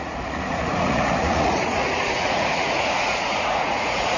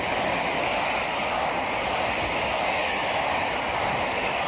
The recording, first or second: second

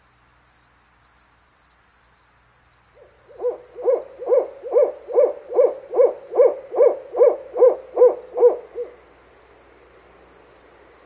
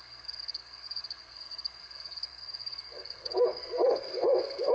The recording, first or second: first